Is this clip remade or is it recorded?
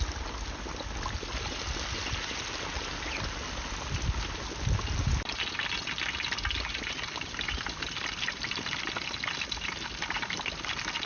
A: recorded